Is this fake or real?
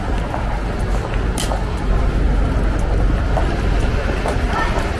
real